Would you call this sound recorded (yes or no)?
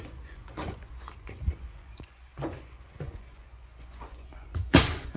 no